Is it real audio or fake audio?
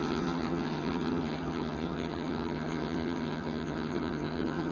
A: fake